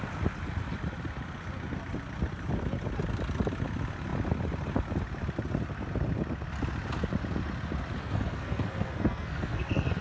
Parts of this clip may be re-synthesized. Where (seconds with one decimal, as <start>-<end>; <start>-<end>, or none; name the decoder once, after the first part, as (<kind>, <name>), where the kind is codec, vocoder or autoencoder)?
8.0-10.0 (codec, SNAC)